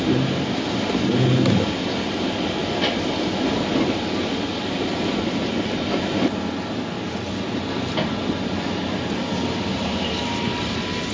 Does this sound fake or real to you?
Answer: real